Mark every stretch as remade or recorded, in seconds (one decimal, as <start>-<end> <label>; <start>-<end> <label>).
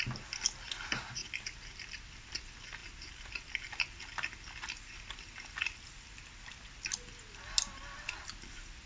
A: 0.0-8.9 recorded